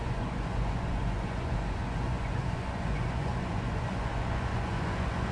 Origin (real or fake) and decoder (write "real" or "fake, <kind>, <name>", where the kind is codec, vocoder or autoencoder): fake, vocoder, Vocos